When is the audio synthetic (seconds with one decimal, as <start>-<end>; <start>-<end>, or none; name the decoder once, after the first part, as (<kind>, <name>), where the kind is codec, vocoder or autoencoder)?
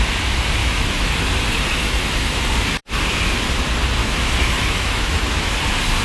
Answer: 0.6-1.1 (autoencoder, DAC-VAE); 1.8-2.4; 4.0-5.5